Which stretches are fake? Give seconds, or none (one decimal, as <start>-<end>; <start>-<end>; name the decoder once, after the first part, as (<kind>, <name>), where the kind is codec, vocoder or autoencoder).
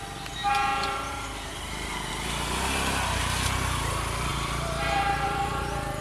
0.4-2.1 (vocoder, BigVGAN v2); 4.3-6.0